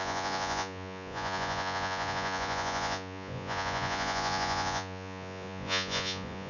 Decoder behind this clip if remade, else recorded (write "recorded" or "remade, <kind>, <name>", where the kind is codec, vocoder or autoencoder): remade, vocoder, Vocos